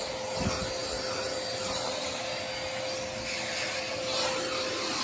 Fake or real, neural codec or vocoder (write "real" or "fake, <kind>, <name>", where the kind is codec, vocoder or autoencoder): real